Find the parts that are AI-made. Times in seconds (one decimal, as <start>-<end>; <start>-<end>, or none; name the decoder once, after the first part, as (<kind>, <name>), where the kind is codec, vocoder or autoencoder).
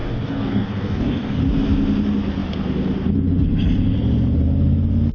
0.0-1.4 (codec, DAC)